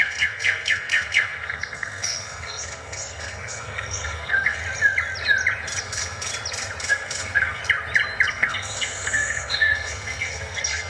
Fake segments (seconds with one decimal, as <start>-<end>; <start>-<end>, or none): 0.0-4.6; 5.8-6.3; 6.8-7.6; 8.3-10.9